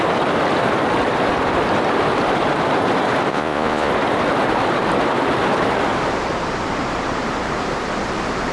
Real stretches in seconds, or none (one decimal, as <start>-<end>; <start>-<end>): 0.0-3.3; 3.9-8.5